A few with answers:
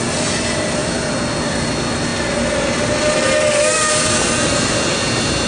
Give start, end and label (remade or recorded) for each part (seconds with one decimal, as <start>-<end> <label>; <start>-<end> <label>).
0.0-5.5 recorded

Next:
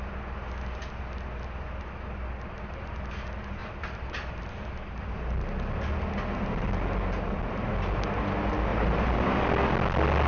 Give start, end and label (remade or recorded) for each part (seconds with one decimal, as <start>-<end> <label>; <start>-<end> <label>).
0.0-3.6 recorded; 3.6-4.5 remade; 4.5-8.7 recorded; 8.7-9.4 remade; 9.4-10.3 recorded

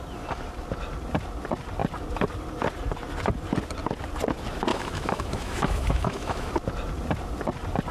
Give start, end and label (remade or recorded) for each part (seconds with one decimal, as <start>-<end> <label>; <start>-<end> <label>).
0.0-4.7 recorded; 4.7-6.5 remade; 6.5-7.9 recorded

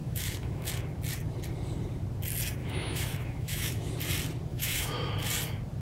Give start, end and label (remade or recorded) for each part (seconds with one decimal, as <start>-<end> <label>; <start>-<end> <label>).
0.0-0.7 remade; 0.7-2.6 recorded; 2.6-3.9 remade; 3.9-4.5 recorded; 4.5-5.1 remade; 5.1-5.8 recorded